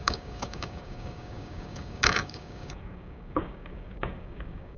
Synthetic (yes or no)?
yes